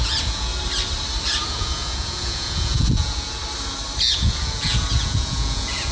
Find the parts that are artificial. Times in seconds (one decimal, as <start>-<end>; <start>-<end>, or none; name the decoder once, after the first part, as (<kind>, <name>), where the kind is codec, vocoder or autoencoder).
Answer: 0.0-0.5 (vocoder, Vocos); 1.5-3.4; 4.1-5.9